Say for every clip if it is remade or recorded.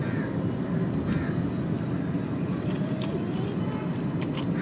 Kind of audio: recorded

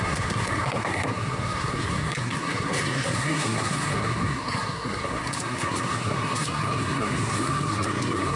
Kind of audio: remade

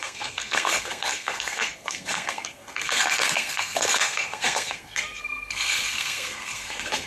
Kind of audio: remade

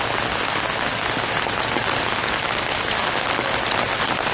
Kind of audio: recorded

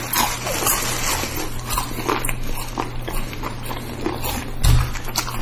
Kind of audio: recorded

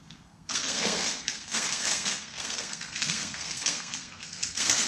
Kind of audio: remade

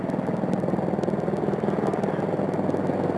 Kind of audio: recorded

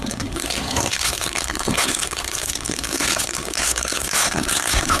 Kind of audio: remade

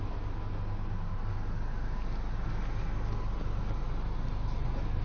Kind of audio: recorded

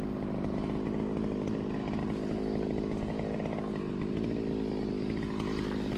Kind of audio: recorded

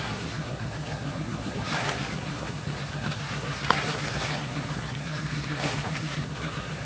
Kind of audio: remade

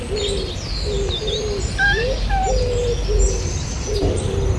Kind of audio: recorded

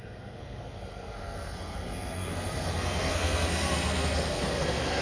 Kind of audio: remade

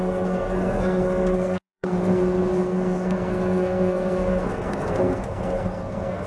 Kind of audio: remade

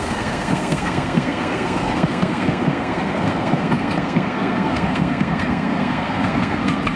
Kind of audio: remade